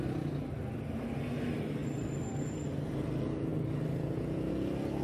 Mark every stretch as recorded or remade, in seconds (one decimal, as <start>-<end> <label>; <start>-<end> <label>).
0.0-5.0 recorded